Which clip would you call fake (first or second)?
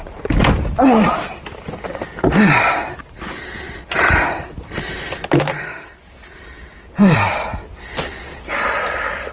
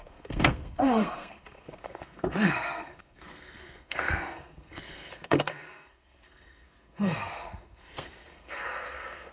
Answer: second